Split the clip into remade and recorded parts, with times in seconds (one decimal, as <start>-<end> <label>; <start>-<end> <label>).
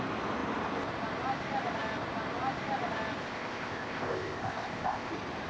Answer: 0.0-3.2 recorded; 3.2-5.1 remade; 5.1-5.5 recorded